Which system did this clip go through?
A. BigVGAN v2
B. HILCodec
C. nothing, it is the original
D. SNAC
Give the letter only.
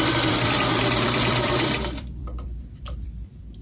A